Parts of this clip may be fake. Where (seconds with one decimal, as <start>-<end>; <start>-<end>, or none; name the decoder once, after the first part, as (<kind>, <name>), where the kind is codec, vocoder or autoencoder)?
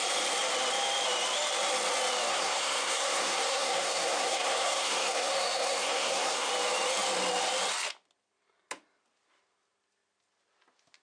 2.3-6.5 (codec, SNAC)